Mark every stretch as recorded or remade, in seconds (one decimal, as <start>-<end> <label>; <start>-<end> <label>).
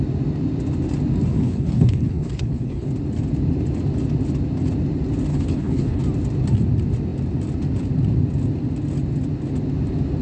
0.0-1.3 recorded; 1.3-2.9 remade; 2.9-5.3 recorded; 5.3-6.0 remade; 6.0-10.2 recorded